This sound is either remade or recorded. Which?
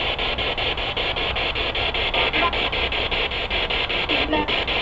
recorded